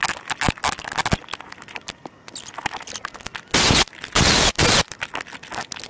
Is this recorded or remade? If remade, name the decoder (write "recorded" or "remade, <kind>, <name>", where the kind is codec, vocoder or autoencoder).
recorded